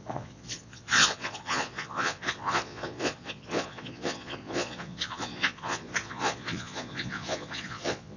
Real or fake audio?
fake